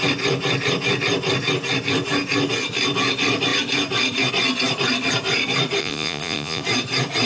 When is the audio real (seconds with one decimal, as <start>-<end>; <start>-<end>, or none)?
0.0-5.8; 6.6-7.3